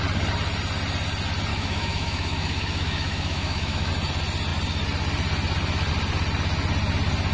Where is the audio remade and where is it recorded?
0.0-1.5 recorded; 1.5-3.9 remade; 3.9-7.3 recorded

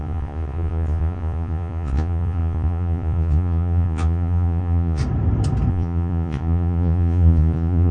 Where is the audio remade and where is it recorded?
0.0-5.0 remade; 5.0-5.7 recorded; 5.7-7.9 remade

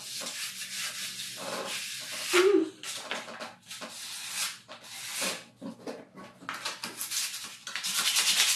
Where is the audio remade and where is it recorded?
0.0-8.6 recorded

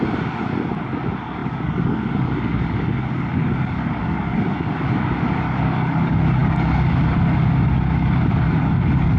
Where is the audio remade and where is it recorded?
0.0-9.2 remade

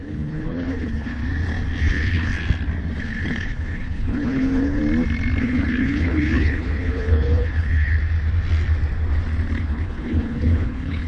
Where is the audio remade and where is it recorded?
0.0-1.2 remade; 1.2-1.8 recorded; 1.8-2.3 remade; 2.3-3.0 recorded; 3.0-4.8 remade; 4.8-5.4 recorded; 5.4-7.9 remade; 7.9-9.6 recorded; 9.6-11.1 remade

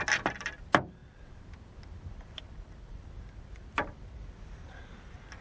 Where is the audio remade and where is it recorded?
0.0-5.4 recorded

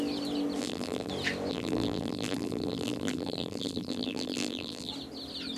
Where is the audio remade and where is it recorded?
0.0-0.6 recorded; 0.6-1.1 remade; 1.1-1.5 recorded; 1.5-4.9 remade; 4.9-5.6 recorded